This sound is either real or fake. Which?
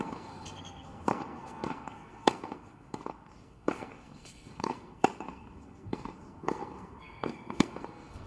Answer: fake